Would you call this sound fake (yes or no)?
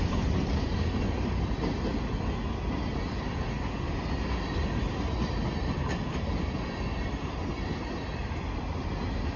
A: no